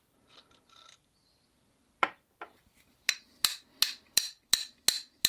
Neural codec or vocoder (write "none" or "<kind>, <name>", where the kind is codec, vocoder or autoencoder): vocoder, BigVGAN v2